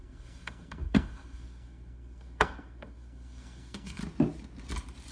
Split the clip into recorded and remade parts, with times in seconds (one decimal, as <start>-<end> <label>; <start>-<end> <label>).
0.0-4.0 remade; 4.0-5.1 recorded